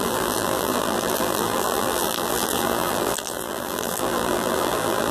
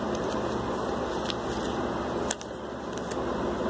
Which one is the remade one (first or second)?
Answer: first